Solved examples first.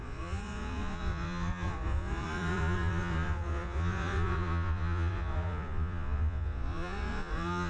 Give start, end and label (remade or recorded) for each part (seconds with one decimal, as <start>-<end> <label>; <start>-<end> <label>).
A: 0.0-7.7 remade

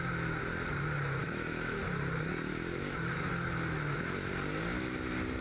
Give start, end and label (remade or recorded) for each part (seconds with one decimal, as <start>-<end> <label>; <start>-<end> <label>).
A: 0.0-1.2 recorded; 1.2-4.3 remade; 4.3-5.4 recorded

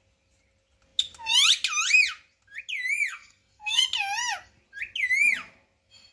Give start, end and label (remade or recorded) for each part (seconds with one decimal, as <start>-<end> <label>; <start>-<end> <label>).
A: 0.0-3.1 recorded; 3.1-3.8 remade; 3.8-6.1 recorded

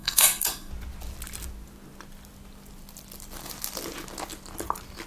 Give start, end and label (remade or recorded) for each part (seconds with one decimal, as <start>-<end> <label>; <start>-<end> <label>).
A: 0.0-0.7 remade; 0.7-5.1 recorded